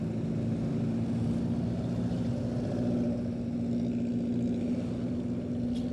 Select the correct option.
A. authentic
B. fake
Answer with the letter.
A